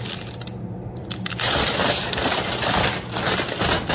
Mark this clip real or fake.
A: real